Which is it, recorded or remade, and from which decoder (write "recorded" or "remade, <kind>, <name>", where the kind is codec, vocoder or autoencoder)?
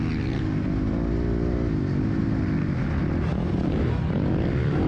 recorded